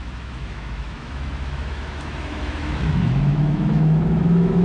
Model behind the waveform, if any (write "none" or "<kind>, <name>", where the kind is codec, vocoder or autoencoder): autoencoder, DAC-VAE